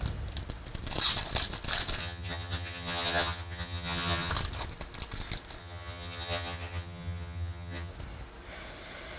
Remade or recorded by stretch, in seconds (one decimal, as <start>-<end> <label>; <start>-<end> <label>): 0.0-2.0 recorded; 2.0-4.3 remade; 4.3-5.6 recorded; 5.6-7.9 remade; 7.9-9.2 recorded